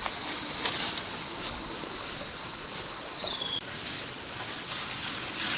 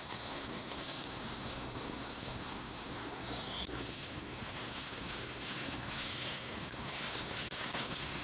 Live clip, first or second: first